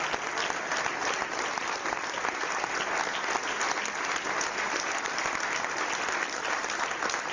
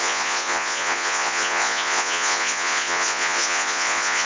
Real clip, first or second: first